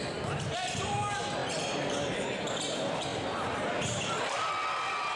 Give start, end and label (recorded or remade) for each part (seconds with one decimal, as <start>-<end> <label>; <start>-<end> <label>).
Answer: 0.0-5.2 recorded

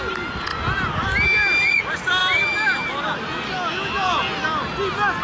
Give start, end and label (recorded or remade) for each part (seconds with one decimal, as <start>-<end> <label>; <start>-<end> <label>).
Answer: 0.0-2.2 recorded; 2.2-2.9 remade; 2.9-5.2 recorded